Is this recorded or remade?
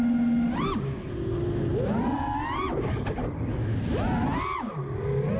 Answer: recorded